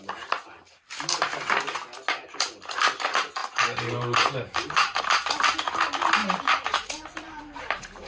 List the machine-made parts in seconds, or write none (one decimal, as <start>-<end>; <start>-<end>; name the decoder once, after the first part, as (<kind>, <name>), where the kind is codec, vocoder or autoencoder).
3.4-5.0 (vocoder, BigVGAN v2); 6.2-7.4